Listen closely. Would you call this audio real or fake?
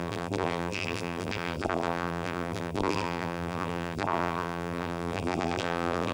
fake